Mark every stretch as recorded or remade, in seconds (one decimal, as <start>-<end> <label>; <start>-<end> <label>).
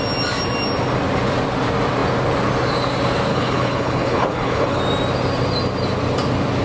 0.0-3.3 recorded; 3.3-4.8 remade; 4.8-6.6 recorded